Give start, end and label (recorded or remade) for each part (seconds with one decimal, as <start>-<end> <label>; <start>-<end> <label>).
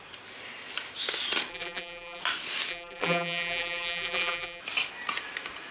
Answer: 0.0-1.5 recorded; 1.5-2.2 remade; 2.2-2.7 recorded; 2.7-4.6 remade; 4.6-5.7 recorded